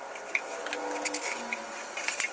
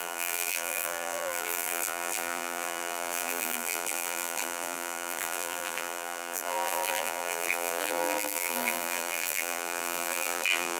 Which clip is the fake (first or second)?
second